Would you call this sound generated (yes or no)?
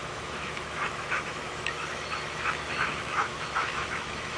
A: yes